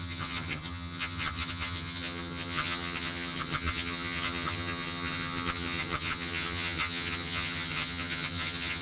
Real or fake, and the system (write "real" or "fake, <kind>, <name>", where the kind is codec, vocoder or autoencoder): fake, vocoder, HiFi-GAN